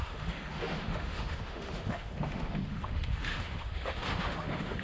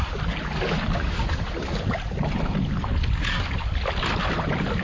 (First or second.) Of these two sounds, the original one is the second